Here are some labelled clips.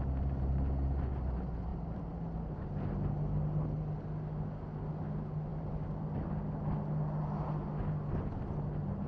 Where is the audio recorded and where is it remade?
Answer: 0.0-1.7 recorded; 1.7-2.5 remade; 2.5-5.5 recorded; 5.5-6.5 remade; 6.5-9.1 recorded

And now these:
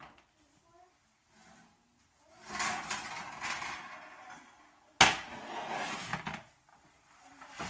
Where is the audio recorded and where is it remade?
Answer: 0.0-6.7 recorded; 6.7-7.7 remade